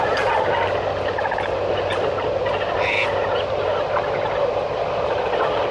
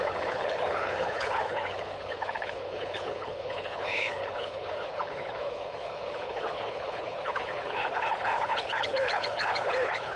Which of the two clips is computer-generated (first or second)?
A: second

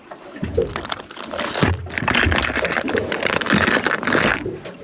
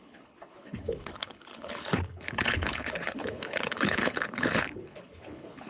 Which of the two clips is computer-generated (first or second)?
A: second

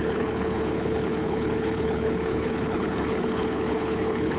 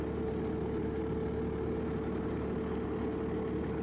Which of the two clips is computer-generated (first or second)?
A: first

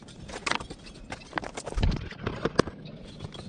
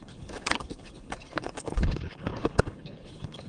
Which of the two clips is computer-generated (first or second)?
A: second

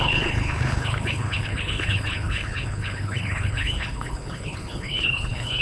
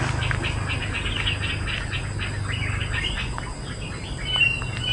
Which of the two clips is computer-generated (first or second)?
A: first